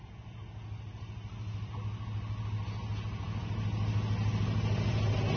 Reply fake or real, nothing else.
real